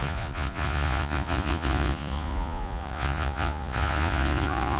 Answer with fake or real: fake